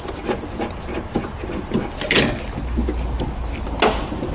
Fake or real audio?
real